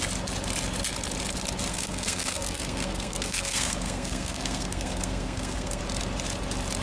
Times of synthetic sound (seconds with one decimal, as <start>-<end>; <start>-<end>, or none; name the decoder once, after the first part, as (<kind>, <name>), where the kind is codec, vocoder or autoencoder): 1.7-5.8 (codec, SNAC)